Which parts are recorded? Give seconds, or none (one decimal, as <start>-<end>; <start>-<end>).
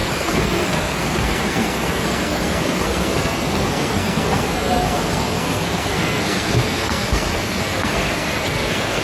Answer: none